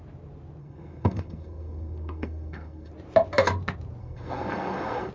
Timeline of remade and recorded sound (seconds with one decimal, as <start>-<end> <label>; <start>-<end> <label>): 0.0-0.6 recorded; 0.6-2.9 remade; 2.9-4.0 recorded; 4.0-5.1 remade